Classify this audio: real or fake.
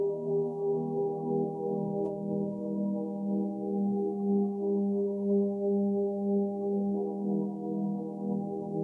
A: fake